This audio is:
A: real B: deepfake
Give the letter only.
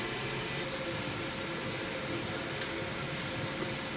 A